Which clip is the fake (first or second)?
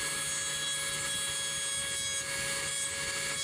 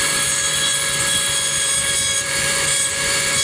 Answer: second